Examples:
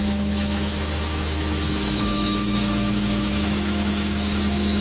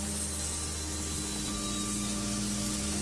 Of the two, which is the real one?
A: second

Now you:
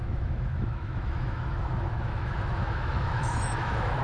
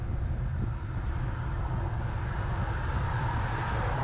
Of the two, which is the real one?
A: second